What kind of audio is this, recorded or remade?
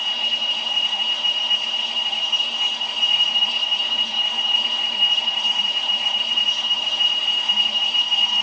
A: remade